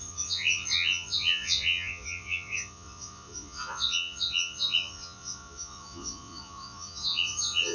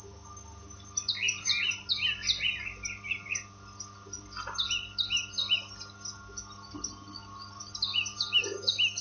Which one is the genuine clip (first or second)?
second